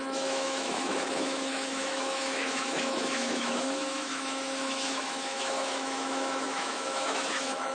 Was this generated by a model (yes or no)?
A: yes